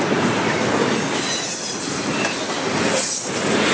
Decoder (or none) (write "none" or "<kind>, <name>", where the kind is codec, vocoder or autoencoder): none